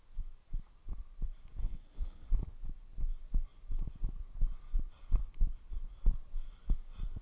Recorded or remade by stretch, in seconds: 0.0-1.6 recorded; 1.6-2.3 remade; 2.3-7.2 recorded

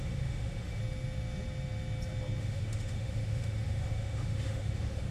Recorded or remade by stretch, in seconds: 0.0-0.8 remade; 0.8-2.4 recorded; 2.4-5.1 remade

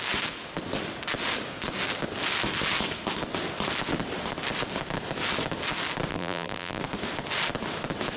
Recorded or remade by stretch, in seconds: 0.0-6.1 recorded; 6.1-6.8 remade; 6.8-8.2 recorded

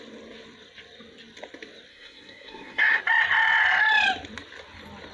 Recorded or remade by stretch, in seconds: 0.0-1.9 recorded; 1.9-3.0 remade; 3.0-5.1 recorded

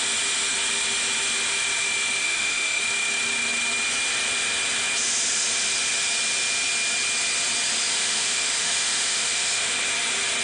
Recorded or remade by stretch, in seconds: 0.0-2.2 recorded; 2.2-2.8 remade; 2.8-7.9 recorded; 7.9-9.7 remade; 9.7-10.4 recorded